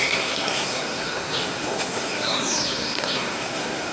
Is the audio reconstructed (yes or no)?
yes